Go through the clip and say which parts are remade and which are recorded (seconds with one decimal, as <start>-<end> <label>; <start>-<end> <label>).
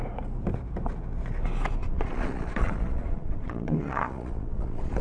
0.0-1.8 recorded; 1.8-5.0 remade